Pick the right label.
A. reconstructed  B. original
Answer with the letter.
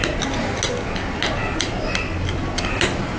B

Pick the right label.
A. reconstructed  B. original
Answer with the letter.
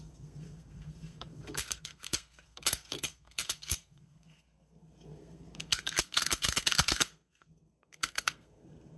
A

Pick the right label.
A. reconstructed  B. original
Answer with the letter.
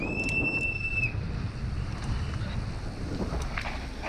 B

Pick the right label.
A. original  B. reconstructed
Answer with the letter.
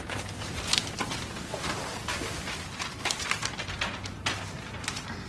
A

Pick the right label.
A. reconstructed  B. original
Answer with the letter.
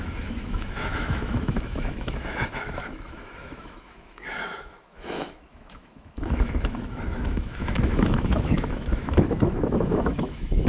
A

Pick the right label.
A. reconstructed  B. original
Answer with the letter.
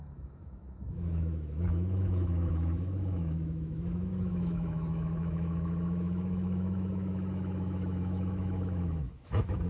A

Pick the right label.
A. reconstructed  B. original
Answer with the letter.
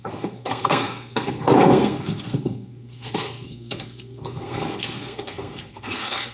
A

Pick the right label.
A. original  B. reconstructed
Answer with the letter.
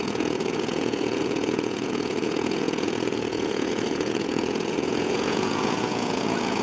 B